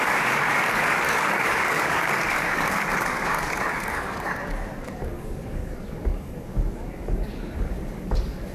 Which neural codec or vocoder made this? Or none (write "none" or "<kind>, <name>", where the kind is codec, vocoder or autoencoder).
codec, DAC